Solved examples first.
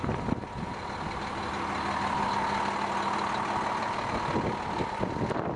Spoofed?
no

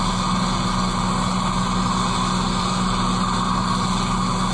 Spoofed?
no